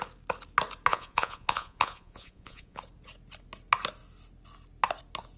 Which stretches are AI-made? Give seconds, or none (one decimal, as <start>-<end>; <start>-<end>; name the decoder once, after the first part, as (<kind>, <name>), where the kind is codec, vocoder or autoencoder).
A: 0.9-2.8 (vocoder, Vocos)